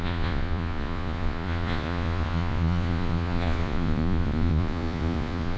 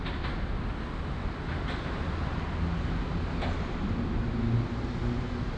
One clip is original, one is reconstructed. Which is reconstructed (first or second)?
first